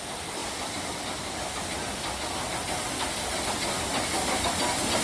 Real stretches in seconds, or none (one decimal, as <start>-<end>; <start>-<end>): 0.0-5.0